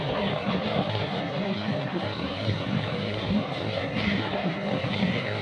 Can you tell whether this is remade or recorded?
remade